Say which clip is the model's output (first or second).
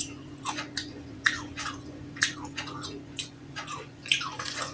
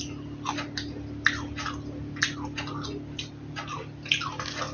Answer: first